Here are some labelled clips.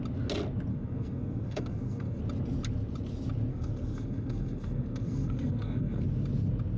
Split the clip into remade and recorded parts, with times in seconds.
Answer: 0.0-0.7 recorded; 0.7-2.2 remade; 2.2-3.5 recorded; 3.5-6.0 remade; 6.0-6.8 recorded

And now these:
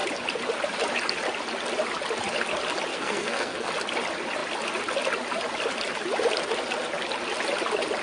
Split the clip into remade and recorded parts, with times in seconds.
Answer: 0.0-2.9 recorded; 2.9-3.7 remade; 3.7-8.0 recorded

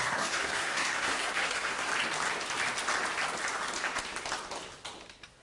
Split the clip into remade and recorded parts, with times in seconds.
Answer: 0.0-1.9 remade; 1.9-5.4 recorded

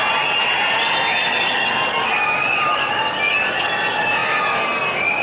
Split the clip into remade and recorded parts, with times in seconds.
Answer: 0.0-5.2 recorded

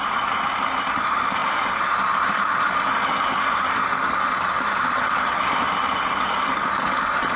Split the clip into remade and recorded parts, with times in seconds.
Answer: 0.0-7.4 recorded

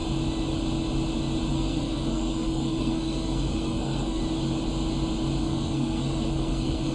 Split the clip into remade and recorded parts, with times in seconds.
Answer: 0.0-1.5 recorded; 1.5-4.2 remade; 4.2-5.4 recorded; 5.4-6.9 remade

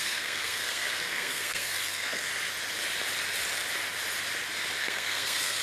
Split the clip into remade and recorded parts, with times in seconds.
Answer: 0.0-2.3 remade; 2.3-4.8 recorded; 4.8-5.6 remade